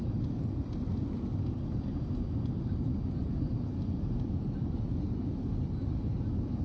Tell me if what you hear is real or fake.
real